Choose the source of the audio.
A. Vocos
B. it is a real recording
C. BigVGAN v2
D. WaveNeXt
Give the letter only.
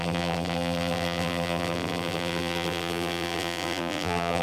C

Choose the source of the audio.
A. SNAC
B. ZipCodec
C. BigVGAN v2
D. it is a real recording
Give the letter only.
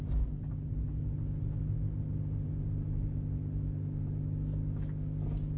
D